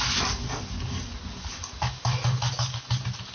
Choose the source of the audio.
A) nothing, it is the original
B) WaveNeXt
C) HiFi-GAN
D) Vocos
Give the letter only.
A